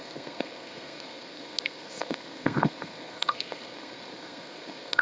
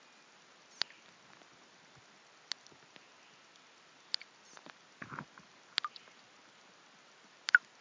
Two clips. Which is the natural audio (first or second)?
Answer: second